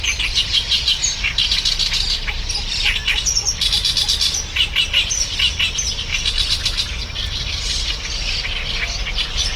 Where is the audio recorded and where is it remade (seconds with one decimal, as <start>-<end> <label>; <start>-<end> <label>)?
0.0-9.6 recorded